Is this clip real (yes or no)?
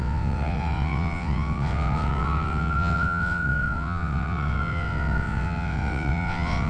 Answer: no